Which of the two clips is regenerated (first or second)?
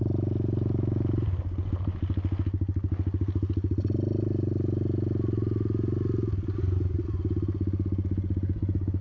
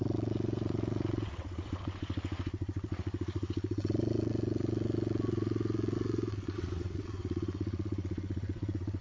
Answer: second